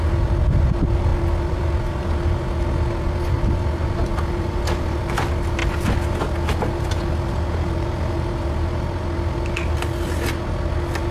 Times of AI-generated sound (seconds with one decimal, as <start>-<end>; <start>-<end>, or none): 1.1-2.1; 4.1-5.0; 5.6-6.1